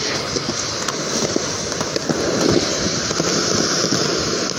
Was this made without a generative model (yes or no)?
yes